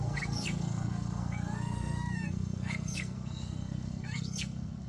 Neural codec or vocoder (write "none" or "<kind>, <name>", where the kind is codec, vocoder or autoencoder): codec, SNAC